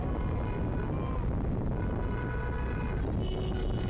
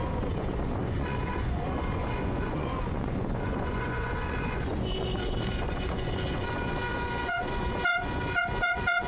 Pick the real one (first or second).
first